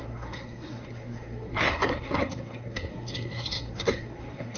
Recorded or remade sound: remade